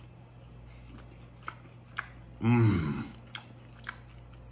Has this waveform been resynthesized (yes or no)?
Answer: no